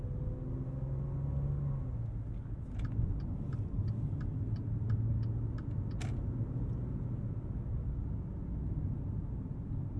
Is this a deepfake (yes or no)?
no